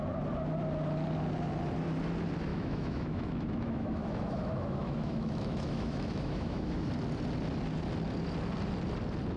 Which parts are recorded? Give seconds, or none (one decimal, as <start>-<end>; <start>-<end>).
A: 0.0-2.5; 6.9-9.4